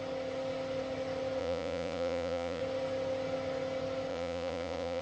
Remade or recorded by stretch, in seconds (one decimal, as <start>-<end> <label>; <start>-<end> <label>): 0.0-1.4 recorded; 1.4-2.6 remade; 2.6-4.1 recorded; 4.1-5.0 remade